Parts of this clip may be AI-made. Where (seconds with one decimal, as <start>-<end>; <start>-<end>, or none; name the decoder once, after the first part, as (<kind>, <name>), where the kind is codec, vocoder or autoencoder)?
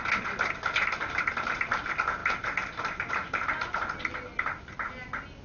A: none